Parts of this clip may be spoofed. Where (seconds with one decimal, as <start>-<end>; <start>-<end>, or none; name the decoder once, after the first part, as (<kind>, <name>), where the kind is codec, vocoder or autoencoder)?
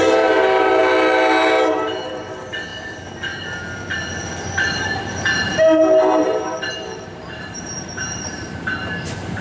0.0-0.8 (vocoder, BigVGAN v2); 2.1-9.4